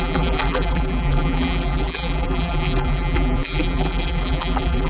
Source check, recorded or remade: remade